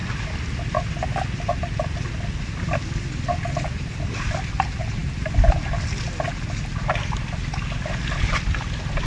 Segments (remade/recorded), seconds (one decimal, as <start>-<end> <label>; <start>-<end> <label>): 0.0-9.1 recorded